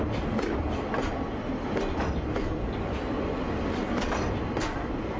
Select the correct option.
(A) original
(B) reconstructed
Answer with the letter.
A